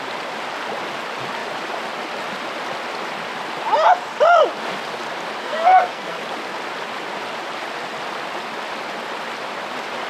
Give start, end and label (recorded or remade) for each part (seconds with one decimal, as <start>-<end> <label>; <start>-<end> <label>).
0.0-5.4 recorded; 5.4-6.2 remade; 6.2-10.1 recorded